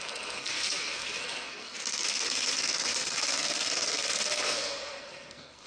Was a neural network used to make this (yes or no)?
yes